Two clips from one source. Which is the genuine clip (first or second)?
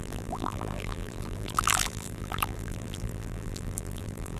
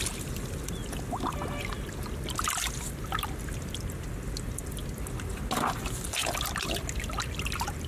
second